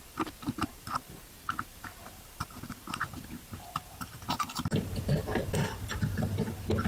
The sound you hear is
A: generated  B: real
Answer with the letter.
A